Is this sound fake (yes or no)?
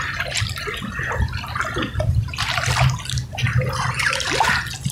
no